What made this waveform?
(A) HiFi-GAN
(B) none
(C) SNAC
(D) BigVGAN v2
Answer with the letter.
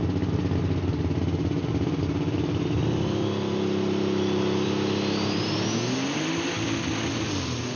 B